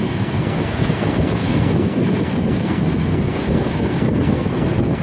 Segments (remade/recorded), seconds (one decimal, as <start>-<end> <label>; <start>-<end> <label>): 0.0-5.0 remade